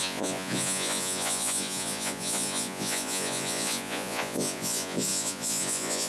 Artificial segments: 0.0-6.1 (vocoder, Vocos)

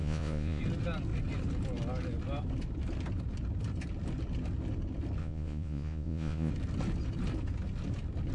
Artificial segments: 0.0-0.6 (vocoder, Vocos); 5.2-6.5

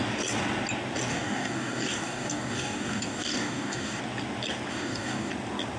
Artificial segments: 1.1-4.0 (codec, DAC); 4.7-5.3

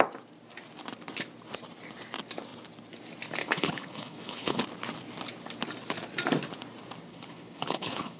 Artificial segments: 3.4-4.6 (codec, HILCodec); 7.1-8.2

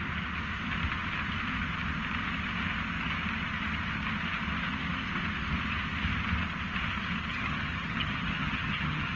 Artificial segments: 7.3-9.2 (vocoder, HiFi-GAN)

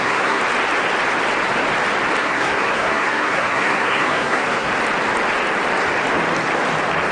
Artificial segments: 0.0-0.4 (codec, SNAC); 2.2-4.7

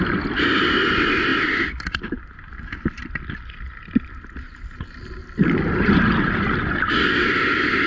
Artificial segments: none

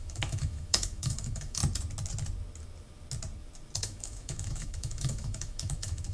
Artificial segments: 0.0-1.6 (autoencoder, DAC-VAE); 3.8-6.1